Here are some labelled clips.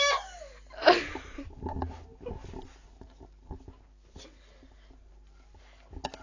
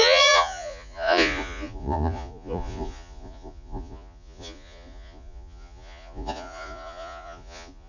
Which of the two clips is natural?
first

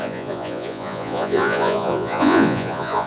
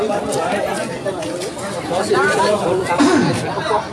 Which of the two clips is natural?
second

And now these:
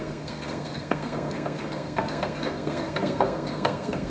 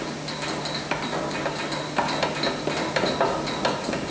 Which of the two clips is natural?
second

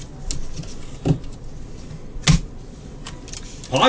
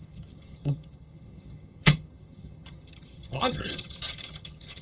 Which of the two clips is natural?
first